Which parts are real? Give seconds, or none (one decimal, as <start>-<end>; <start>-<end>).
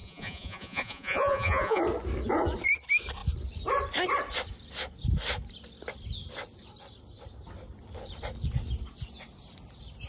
1.8-10.1